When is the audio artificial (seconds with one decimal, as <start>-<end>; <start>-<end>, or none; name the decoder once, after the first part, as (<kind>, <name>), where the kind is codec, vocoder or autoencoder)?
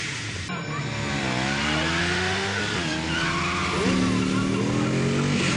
2.0-2.6 (autoencoder, DAC-VAE)